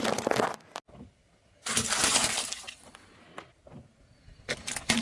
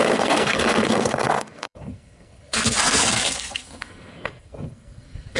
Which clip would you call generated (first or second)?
second